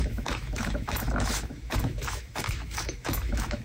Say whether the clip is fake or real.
fake